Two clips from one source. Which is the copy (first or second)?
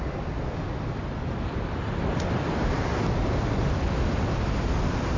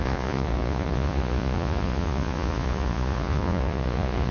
second